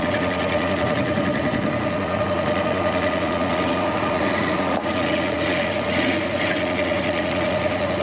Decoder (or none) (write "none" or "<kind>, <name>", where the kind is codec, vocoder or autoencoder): vocoder, Vocos